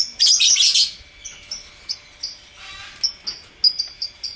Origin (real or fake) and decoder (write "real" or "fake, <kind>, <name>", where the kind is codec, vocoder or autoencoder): real